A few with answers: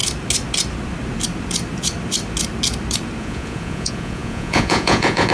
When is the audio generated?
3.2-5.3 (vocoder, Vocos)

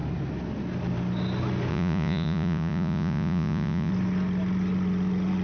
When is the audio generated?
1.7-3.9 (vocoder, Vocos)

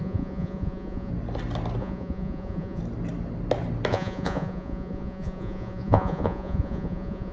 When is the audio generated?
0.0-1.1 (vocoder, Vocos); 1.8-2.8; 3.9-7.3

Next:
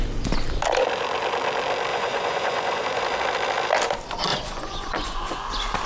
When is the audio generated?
1.9-3.0 (vocoder, Vocos); 4.3-5.5